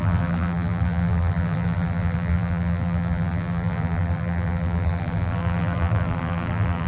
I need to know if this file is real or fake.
fake